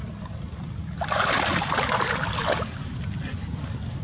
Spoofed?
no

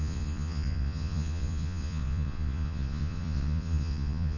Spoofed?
yes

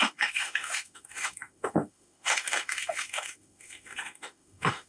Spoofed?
yes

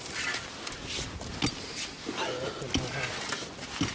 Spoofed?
no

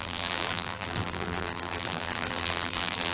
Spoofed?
yes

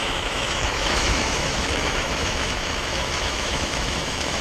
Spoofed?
yes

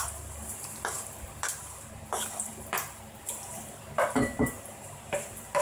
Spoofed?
yes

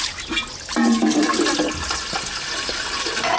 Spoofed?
no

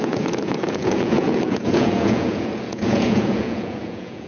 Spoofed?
yes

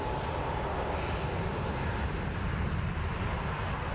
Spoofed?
no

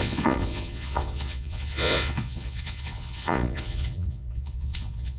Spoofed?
yes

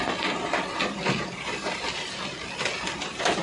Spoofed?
no